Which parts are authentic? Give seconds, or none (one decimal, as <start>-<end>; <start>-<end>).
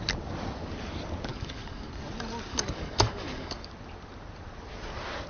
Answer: 0.0-1.3; 1.9-2.5; 3.7-5.3